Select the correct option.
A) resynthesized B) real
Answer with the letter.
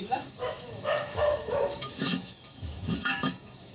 A